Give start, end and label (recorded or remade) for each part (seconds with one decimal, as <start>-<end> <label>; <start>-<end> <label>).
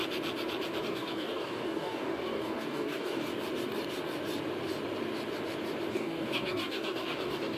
0.0-0.8 recorded; 0.8-3.3 remade; 3.3-5.9 recorded; 5.9-7.6 remade